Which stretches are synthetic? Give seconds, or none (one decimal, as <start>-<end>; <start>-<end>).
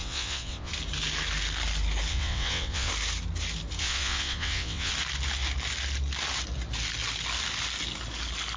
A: 0.0-0.7; 2.1-2.9; 3.8-4.9